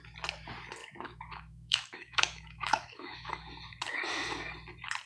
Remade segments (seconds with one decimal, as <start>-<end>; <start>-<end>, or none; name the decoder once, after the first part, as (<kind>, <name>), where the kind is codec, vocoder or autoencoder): 0.8-3.5 (autoencoder, DAC-VAE)